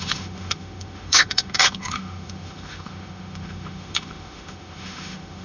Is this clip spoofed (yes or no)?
yes